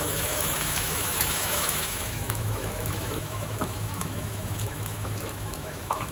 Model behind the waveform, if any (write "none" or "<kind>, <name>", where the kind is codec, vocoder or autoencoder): autoencoder, DAC-VAE